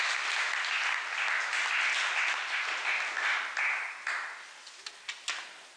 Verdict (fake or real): real